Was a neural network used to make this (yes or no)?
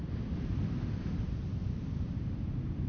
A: no